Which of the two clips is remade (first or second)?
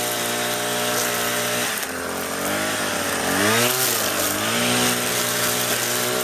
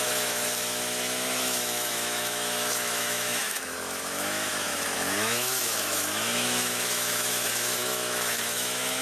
second